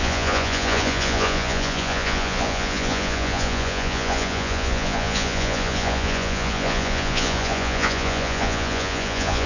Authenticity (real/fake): fake